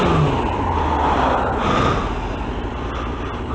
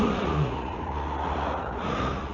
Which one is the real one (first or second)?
first